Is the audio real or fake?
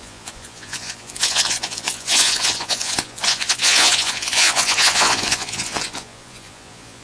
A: fake